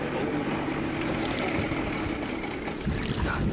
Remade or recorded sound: recorded